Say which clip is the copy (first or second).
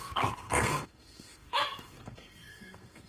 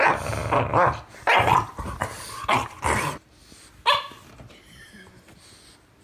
first